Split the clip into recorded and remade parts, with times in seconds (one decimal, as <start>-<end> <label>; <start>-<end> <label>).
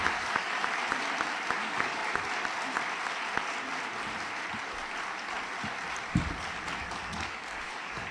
0.0-0.6 remade; 0.6-1.6 recorded; 1.6-2.0 remade; 2.0-6.8 recorded; 6.8-8.1 remade